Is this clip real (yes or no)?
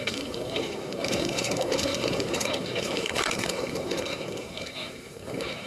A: no